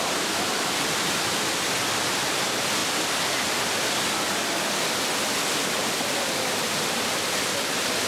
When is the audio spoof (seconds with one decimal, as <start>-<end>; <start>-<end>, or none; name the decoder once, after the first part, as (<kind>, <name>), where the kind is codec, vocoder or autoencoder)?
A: none